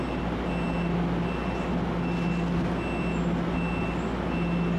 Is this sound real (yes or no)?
yes